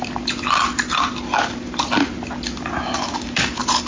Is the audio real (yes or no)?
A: yes